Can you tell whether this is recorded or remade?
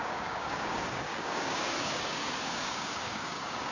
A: remade